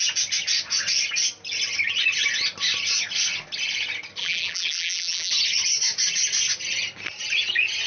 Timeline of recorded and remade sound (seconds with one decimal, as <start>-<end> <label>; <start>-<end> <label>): 0.0-4.2 recorded; 4.2-5.3 remade; 5.3-7.9 recorded